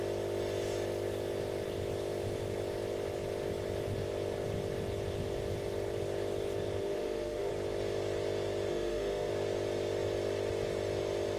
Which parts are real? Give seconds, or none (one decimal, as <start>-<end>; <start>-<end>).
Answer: 0.0-6.8; 7.5-8.7; 9.3-11.4